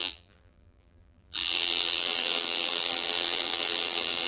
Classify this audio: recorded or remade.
remade